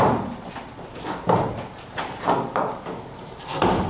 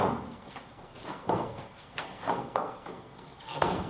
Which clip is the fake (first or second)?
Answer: second